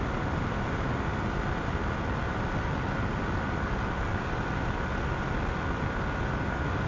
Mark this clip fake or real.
real